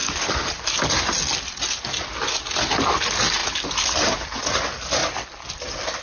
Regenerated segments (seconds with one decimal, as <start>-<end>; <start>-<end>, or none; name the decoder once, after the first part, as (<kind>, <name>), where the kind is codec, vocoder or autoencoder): 0.0-0.8 (vocoder, BigVGAN v2); 3.4-4.4; 5.0-6.0